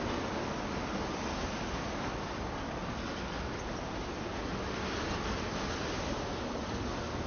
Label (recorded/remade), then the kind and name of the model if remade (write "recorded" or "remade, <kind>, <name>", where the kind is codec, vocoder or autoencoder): recorded